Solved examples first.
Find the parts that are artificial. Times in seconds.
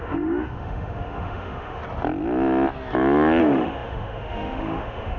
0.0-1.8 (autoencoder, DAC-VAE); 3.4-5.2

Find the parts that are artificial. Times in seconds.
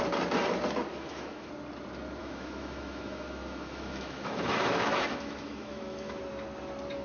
0.9-1.5 (autoencoder, DAC-VAE); 2.2-6.2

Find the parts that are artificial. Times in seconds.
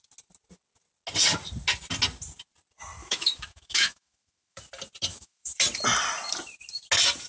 3.0-4.6 (autoencoder, DAC-VAE); 5.1-5.6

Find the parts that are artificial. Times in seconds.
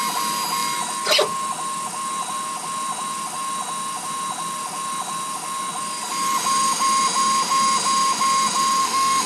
8.8-9.3 (autoencoder, DAC-VAE)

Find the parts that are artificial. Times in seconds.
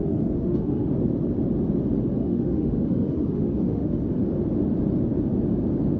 0.0-0.9 (autoencoder, DAC-VAE); 2.2-4.1